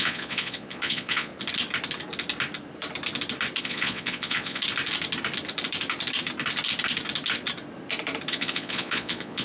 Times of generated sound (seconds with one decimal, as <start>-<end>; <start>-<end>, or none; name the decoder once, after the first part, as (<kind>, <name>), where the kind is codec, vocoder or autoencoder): 0.0-1.3 (vocoder, Vocos); 3.6-4.6; 8.3-9.4